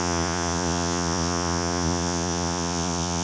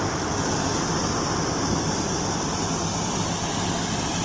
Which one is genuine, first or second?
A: second